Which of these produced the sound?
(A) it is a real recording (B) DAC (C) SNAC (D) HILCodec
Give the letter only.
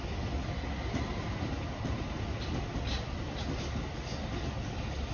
A